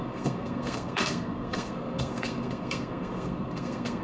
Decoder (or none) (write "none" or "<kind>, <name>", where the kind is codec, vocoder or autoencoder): codec, SNAC